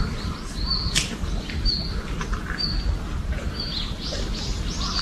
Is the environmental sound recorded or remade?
recorded